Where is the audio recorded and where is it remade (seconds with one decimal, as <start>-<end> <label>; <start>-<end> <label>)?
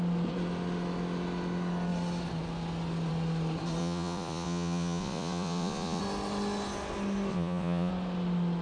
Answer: 0.0-3.8 recorded; 3.8-6.0 remade; 6.0-7.3 recorded; 7.3-7.9 remade; 7.9-8.6 recorded